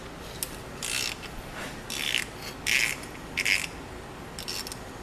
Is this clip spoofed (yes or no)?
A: no